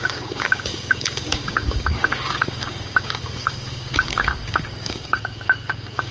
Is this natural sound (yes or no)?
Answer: no